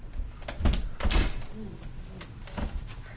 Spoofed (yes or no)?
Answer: no